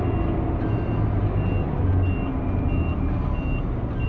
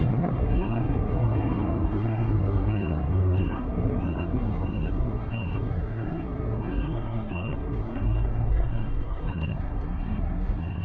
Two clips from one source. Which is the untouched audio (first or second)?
first